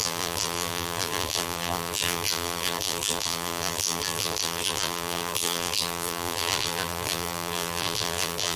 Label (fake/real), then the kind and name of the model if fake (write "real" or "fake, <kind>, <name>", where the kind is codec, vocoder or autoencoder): fake, vocoder, BigVGAN v2